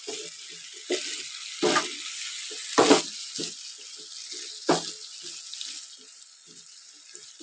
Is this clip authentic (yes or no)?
yes